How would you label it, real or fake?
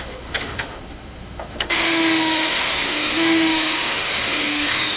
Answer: fake